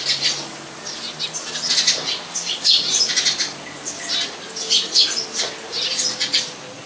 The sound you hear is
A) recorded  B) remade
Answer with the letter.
A